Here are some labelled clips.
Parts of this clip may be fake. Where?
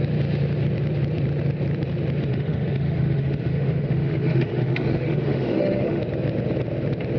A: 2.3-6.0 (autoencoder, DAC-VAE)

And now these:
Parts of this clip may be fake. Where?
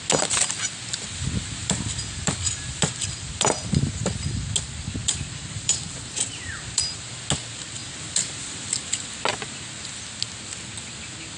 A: 1.6-4.5 (vocoder, BigVGAN v2); 5.0-7.1; 7.8-8.8